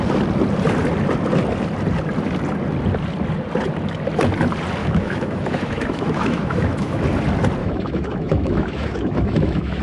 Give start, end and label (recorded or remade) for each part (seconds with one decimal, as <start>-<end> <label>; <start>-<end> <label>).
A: 0.0-4.8 recorded; 4.8-7.0 remade; 7.0-7.6 recorded; 7.6-9.8 remade